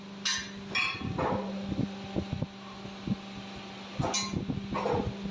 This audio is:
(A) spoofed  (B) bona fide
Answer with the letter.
B